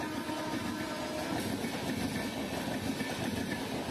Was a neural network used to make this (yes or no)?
no